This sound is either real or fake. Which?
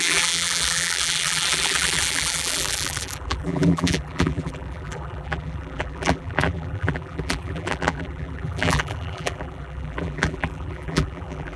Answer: fake